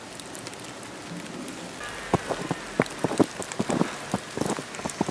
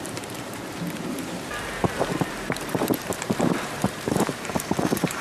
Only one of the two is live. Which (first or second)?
first